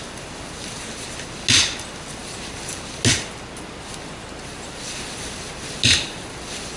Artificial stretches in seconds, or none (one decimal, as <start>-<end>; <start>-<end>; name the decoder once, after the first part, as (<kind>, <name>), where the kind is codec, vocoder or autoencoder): none